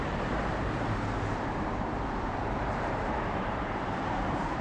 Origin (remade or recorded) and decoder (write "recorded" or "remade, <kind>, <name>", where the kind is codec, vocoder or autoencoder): remade, vocoder, BigVGAN v2